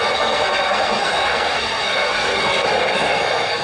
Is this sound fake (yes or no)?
yes